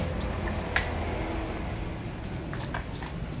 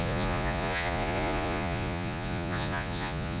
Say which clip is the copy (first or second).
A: second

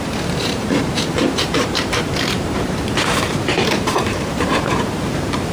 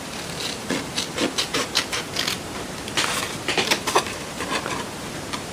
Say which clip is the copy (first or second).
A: first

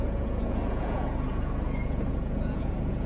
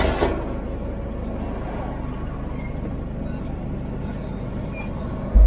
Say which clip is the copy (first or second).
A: first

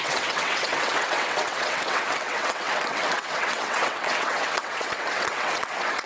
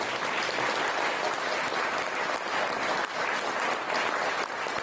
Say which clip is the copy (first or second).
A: first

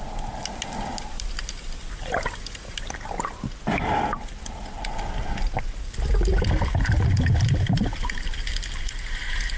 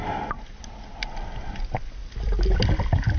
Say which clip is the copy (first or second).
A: first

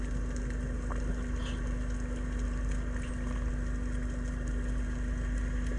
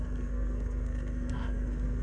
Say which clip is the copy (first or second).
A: second